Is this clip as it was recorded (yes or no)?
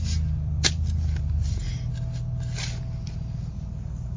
yes